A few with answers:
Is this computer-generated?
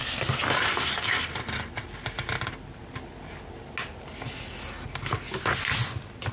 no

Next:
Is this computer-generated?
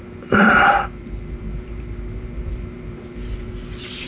yes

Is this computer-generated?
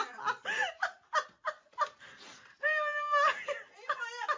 no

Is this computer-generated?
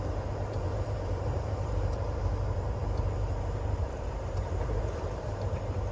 yes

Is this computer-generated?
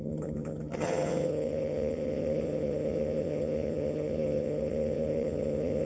yes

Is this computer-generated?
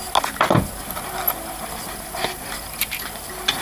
no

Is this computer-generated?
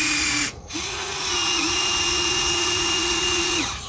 yes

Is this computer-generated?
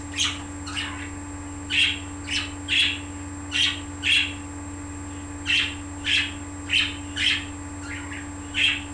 no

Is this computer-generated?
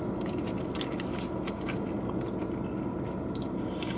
no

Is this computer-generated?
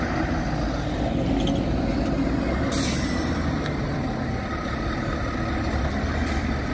no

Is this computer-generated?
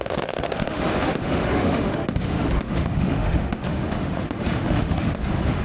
yes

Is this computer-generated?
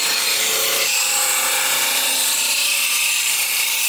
yes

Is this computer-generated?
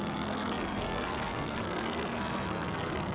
yes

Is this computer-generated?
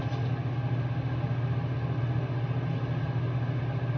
no